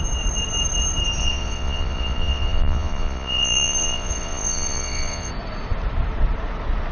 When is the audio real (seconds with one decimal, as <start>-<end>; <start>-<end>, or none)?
0.0-1.2; 5.3-6.9